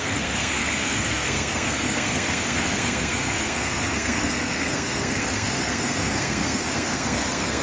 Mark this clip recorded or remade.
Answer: remade